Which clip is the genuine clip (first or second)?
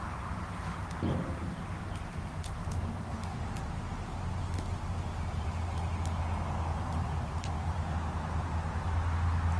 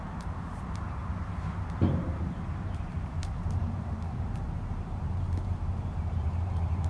first